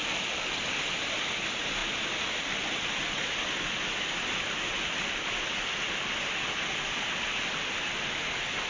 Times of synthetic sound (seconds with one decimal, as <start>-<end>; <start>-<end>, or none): none